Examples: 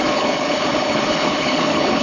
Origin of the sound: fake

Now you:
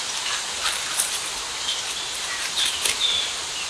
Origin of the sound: real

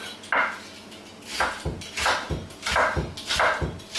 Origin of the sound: real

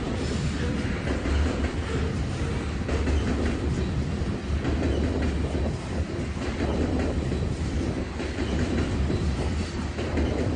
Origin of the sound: real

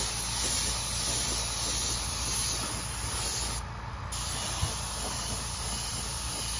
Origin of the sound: real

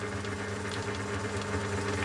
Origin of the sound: real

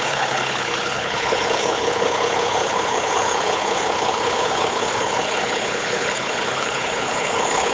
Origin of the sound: fake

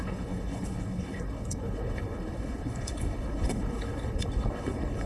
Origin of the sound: fake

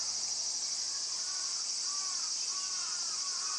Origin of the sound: real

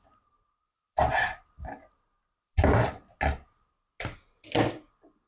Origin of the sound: real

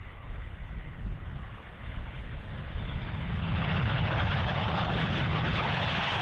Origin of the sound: fake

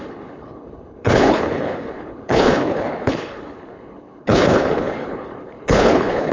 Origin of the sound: fake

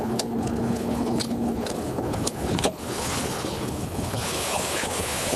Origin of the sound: fake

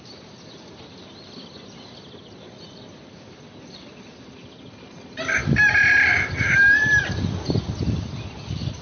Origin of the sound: real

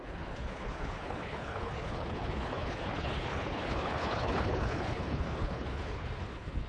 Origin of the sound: fake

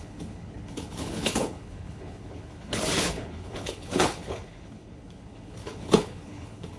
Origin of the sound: fake